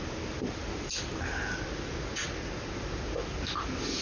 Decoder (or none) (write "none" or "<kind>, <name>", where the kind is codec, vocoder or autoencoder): none